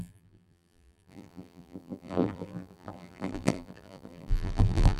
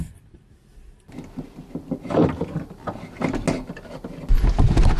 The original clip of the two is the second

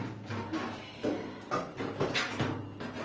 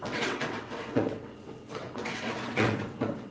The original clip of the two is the first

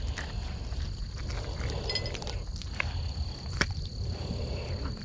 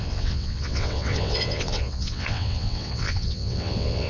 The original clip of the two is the first